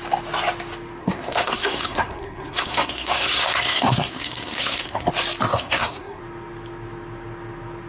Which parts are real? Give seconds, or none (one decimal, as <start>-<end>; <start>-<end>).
0.0-1.0; 5.1-5.5; 6.2-7.9

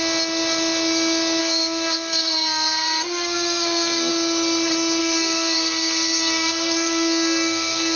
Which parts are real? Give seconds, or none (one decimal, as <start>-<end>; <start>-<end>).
0.0-1.4; 4.1-5.0

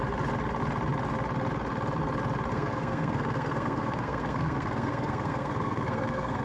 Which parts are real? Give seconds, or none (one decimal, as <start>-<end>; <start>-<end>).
0.0-2.5

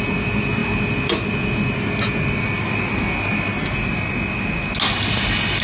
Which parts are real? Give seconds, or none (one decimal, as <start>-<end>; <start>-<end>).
0.0-5.6